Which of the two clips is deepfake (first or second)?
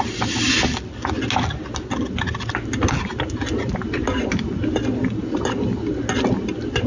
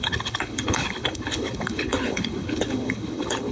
second